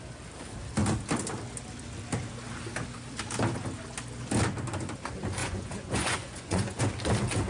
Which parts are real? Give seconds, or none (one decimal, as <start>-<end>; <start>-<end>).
0.0-5.4; 6.8-7.5